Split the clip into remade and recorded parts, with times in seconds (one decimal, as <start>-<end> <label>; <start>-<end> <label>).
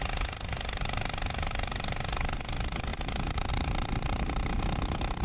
0.0-5.2 recorded